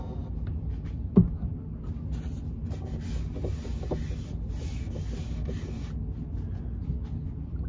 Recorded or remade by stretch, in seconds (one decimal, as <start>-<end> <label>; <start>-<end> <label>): 0.0-7.7 recorded